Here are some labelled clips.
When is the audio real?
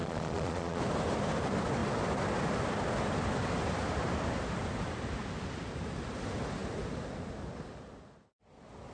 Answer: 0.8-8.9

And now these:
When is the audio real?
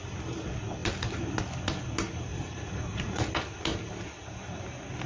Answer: 0.0-2.3; 3.2-5.1